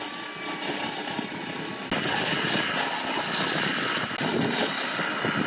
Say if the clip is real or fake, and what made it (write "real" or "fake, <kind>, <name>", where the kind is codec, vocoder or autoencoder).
real